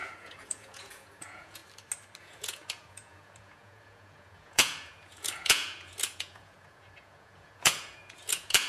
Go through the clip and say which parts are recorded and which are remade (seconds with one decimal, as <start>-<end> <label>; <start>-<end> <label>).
0.0-1.6 remade; 1.6-2.2 recorded; 2.2-8.7 remade